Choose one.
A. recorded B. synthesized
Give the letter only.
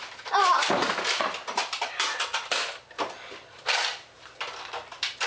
A